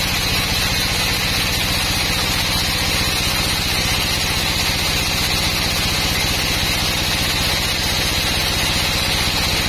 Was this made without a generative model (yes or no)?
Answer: yes